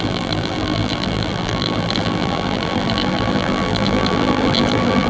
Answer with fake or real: fake